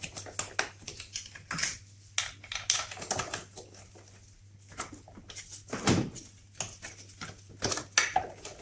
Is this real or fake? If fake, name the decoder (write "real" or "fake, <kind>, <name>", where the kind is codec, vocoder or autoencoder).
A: real